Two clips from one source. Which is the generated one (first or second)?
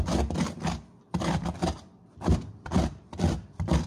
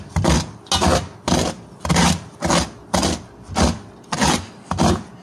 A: first